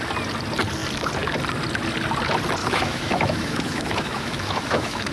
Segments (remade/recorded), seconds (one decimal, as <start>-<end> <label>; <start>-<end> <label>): 0.0-2.6 recorded; 2.6-5.1 remade